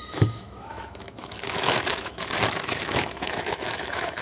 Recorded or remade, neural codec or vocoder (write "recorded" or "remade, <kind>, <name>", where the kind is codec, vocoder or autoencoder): remade, autoencoder, DAC-VAE